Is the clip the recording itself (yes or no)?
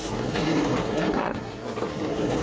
no